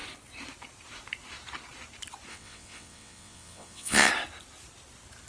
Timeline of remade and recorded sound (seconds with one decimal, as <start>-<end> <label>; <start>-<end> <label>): 0.0-2.3 recorded; 2.3-4.1 remade; 4.1-5.3 recorded